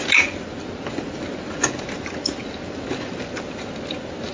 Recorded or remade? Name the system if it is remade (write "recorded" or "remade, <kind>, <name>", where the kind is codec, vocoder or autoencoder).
recorded